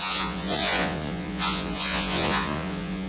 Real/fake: fake